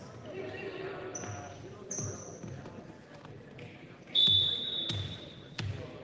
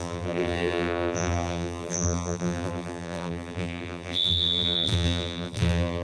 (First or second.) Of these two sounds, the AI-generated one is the second